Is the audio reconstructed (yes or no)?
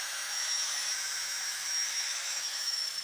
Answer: yes